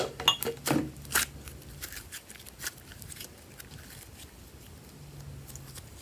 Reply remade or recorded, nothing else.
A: recorded